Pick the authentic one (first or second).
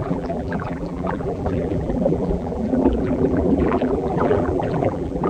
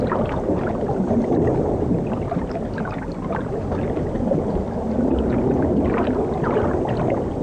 second